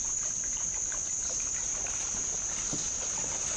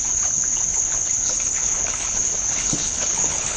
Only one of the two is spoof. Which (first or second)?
second